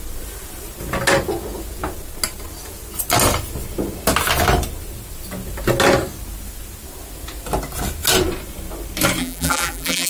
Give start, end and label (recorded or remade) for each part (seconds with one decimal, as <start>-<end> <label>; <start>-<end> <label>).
0.0-9.2 recorded; 9.2-10.1 remade